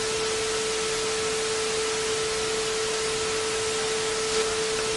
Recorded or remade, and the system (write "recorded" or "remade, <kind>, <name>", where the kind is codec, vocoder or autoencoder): recorded